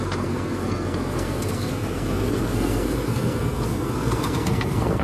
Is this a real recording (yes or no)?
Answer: no